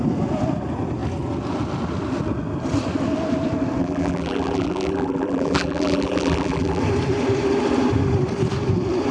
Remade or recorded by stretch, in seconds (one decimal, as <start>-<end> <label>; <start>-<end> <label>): 0.0-3.8 recorded; 3.8-6.8 remade; 6.8-9.1 recorded